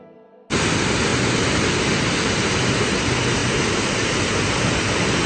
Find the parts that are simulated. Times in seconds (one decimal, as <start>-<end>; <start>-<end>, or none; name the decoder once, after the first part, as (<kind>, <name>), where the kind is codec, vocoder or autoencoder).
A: 1.1-2.3 (vocoder, BigVGAN v2)